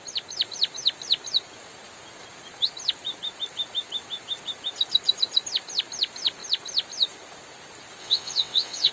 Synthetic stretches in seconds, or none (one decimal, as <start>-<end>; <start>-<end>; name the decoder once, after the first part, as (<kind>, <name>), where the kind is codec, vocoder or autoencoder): 8.0-8.9 (vocoder, WaveNeXt)